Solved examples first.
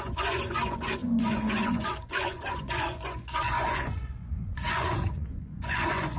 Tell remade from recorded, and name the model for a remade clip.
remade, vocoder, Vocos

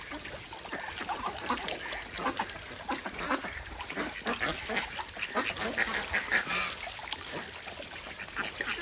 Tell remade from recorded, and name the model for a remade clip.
recorded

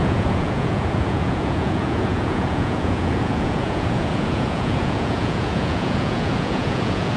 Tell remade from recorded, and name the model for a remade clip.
remade, vocoder, Vocos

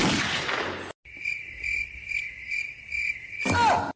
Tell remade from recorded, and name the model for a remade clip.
recorded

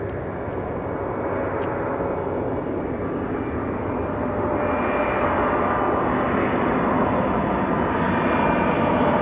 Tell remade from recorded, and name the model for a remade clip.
recorded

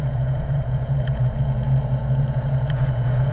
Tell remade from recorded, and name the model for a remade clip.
remade, vocoder, Vocos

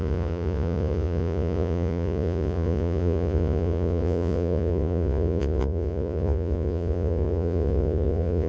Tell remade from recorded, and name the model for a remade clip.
remade, vocoder, Vocos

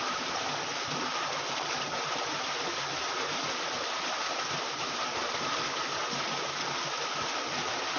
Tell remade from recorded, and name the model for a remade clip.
recorded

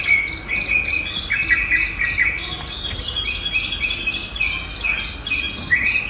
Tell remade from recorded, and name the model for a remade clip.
recorded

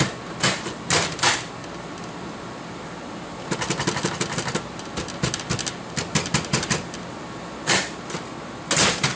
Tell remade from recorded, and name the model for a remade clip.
recorded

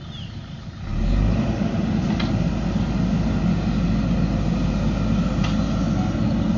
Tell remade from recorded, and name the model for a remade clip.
recorded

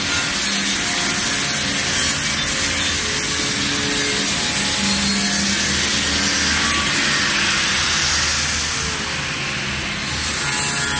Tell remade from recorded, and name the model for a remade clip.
recorded